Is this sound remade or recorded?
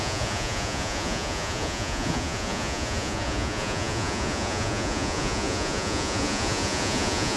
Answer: remade